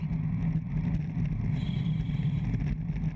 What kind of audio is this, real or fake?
real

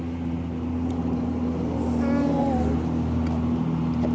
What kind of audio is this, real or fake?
real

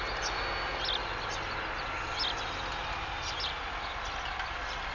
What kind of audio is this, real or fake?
real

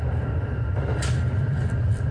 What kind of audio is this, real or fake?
fake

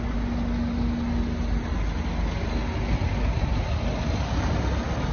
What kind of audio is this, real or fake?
real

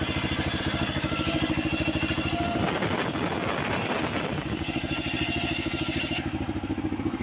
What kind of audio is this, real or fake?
real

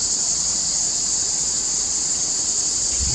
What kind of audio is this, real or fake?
fake